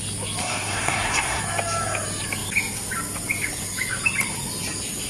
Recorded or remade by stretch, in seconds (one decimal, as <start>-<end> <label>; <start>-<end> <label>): 0.0-0.4 recorded; 0.4-1.4 remade; 1.4-5.1 recorded